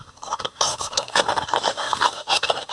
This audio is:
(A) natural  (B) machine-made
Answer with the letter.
B